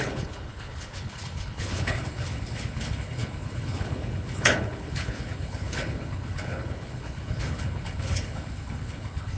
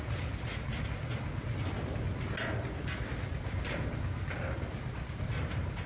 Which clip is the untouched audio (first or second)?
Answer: second